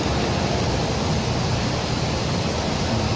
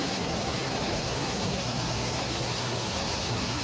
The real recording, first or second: first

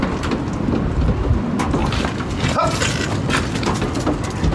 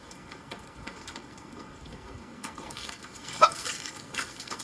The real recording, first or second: first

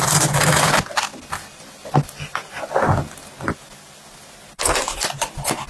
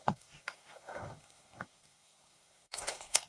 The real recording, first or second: first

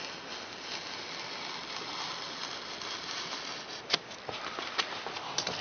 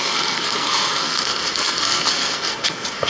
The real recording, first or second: first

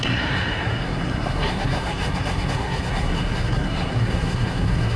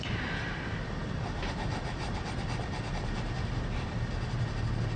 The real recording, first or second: second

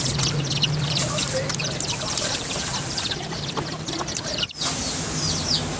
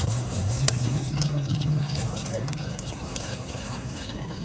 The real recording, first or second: first